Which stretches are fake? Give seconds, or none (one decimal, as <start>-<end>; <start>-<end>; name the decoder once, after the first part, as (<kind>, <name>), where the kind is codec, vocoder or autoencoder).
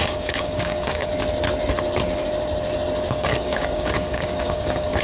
0.0-1.0 (codec, DAC); 3.1-5.0